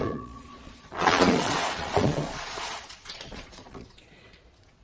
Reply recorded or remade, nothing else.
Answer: remade